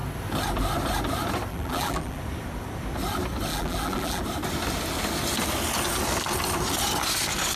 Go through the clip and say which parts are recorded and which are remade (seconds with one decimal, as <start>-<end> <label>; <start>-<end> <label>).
0.0-1.5 recorded; 1.5-2.2 remade; 2.2-3.5 recorded; 3.5-4.2 remade; 4.2-7.6 recorded